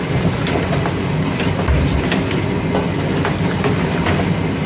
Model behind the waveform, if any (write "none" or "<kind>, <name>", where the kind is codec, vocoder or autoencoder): none